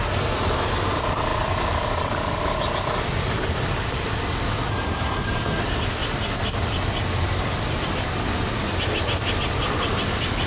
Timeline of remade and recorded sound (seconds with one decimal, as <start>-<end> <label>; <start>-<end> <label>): 0.0-4.7 recorded; 4.7-5.6 remade; 5.6-10.5 recorded